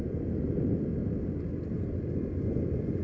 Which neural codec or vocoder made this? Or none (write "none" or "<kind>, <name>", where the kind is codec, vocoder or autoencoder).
none